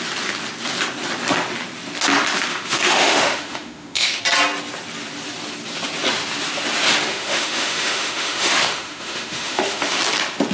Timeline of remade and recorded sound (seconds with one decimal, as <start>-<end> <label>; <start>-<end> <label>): 0.0-2.5 recorded; 2.5-4.2 remade; 4.2-7.1 recorded; 7.1-10.0 remade; 10.0-10.5 recorded